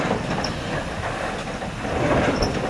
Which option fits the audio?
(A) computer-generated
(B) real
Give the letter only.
B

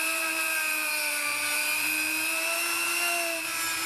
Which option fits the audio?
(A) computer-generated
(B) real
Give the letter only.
A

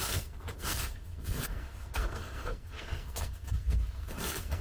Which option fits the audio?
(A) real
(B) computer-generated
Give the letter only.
B